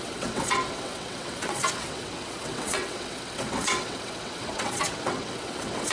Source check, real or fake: fake